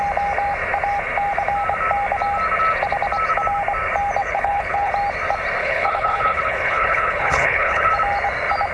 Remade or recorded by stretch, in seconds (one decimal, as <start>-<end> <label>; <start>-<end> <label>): 0.0-4.2 recorded; 4.2-4.9 remade; 4.9-5.6 recorded; 5.6-7.9 remade; 7.9-8.7 recorded